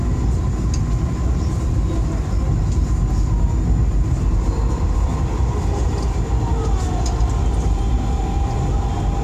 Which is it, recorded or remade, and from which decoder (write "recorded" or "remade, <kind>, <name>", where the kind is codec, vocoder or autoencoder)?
recorded